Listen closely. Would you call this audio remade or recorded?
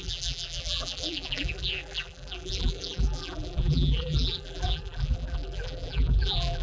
remade